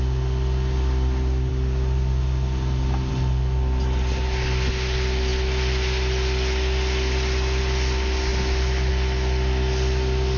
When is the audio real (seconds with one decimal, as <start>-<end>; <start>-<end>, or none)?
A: 0.0-10.4